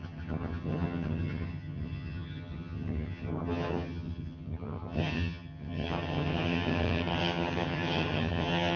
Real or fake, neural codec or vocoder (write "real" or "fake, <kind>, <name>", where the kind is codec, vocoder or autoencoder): fake, vocoder, HiFi-GAN